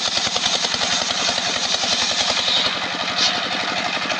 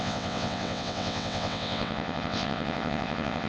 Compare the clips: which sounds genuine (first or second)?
first